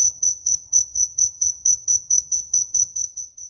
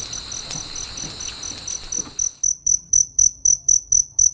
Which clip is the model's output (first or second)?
first